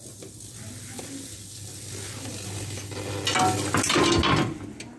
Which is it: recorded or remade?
recorded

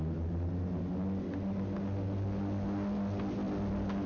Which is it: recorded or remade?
recorded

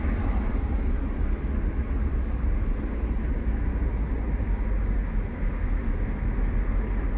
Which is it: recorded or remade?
recorded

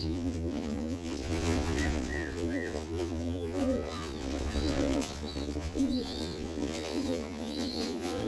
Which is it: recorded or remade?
remade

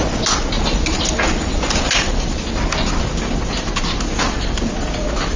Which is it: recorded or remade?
recorded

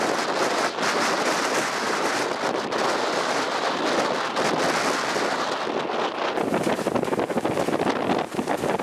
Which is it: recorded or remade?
recorded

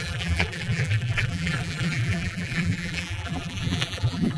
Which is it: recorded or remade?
remade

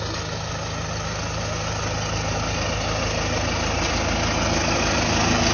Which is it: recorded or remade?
recorded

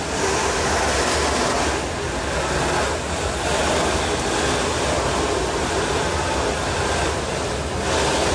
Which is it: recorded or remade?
recorded